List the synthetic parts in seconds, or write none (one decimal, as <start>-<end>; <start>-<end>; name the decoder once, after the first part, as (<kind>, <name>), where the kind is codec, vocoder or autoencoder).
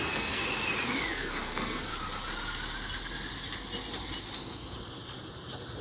0.0-0.4 (codec, SNAC); 1.1-1.9